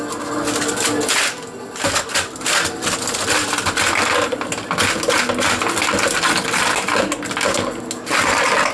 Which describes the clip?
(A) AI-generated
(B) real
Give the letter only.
B